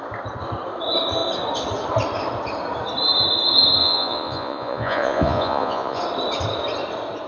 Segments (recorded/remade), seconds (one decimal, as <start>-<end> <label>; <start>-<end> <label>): 0.0-3.8 recorded; 3.8-6.0 remade; 6.0-7.3 recorded